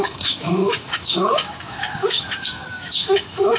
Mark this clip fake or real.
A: fake